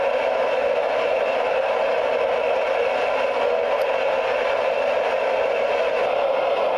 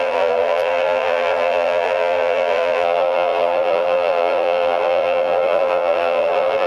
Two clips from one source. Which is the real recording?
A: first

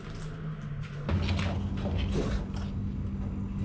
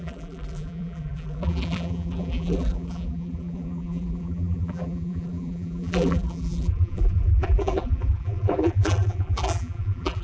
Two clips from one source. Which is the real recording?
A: first